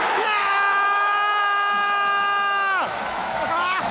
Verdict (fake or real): fake